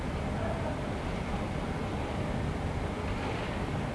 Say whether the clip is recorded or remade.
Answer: recorded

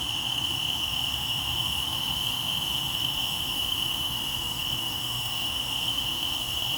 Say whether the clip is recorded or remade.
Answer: remade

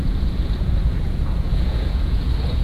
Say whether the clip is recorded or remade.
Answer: remade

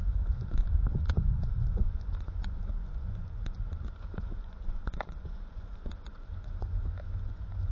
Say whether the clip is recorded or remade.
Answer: remade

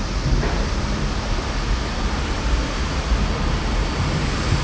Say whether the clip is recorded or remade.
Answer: recorded